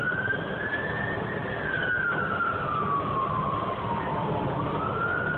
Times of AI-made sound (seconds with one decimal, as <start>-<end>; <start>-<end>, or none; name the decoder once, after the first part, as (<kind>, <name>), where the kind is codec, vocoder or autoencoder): none